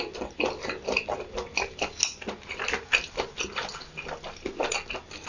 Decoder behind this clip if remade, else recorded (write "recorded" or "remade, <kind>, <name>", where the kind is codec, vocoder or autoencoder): recorded